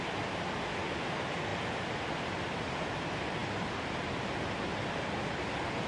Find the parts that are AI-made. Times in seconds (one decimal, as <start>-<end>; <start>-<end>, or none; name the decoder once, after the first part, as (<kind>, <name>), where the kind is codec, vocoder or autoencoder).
1.5-2.7 (vocoder, BigVGAN v2)